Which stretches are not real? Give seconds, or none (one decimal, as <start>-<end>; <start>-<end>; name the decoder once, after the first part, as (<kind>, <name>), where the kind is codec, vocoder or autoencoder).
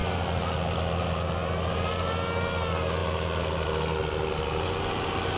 none